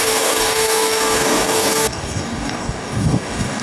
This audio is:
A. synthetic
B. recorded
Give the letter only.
A